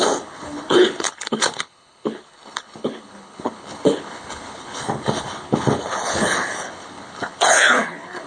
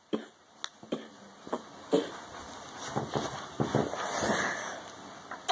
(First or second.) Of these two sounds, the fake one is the first